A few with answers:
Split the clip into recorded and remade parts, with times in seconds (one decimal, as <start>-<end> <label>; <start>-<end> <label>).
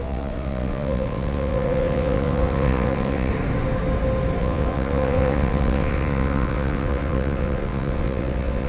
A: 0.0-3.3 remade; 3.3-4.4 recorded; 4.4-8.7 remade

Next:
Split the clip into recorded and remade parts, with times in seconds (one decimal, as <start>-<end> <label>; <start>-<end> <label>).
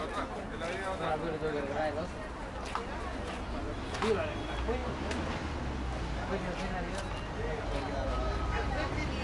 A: 0.0-9.2 recorded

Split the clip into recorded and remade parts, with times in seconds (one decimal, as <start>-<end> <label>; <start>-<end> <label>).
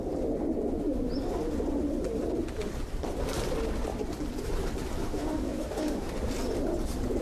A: 0.0-5.0 recorded; 5.0-6.1 remade; 6.1-7.2 recorded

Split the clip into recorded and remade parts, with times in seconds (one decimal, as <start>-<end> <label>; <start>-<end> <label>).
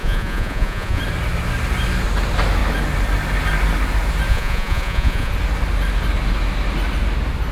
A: 0.0-1.0 remade; 1.0-4.3 recorded; 4.3-5.3 remade; 5.3-7.5 recorded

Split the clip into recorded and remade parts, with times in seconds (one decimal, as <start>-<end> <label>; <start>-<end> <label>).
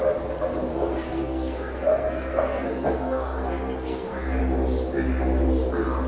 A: 0.0-0.7 recorded; 0.7-4.4 remade; 4.4-6.1 recorded